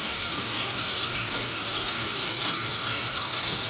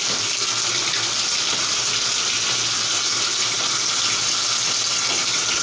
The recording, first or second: second